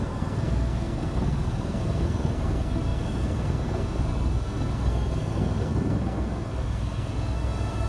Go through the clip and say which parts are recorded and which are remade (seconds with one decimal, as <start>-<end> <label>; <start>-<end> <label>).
0.0-7.9 remade